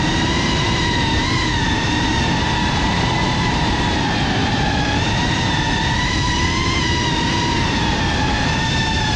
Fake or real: fake